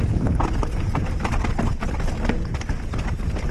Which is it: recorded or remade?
recorded